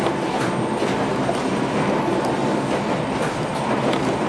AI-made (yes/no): no